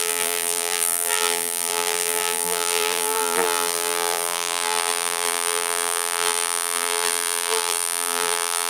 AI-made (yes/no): yes